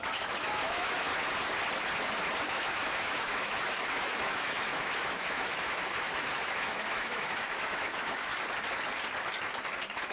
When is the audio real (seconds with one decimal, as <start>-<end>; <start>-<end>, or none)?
1.1-2.5; 8.3-10.1